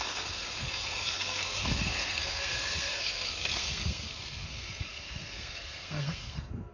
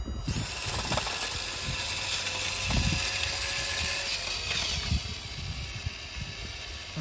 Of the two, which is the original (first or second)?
second